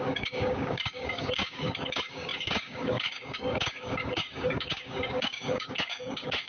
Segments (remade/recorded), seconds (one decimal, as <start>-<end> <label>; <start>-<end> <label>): 0.0-6.5 remade